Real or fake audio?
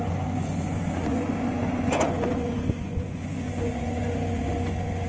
fake